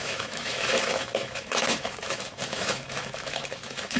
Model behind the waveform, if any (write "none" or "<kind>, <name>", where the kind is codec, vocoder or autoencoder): autoencoder, DAC-VAE